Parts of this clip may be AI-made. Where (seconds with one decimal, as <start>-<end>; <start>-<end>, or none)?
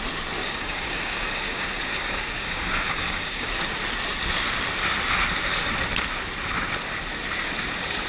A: 0.4-3.5